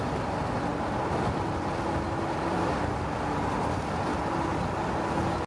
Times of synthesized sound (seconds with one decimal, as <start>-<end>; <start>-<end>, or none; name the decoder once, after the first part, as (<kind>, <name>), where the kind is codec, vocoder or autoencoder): none